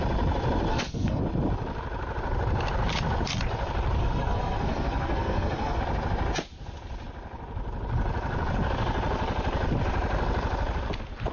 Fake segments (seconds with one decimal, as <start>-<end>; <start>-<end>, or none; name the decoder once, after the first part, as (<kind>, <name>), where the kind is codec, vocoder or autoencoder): 0.7-1.2 (codec, SNAC); 4.0-5.8